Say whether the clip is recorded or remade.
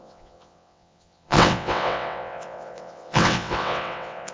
remade